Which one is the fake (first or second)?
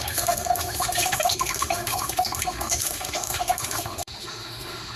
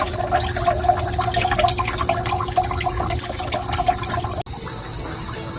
first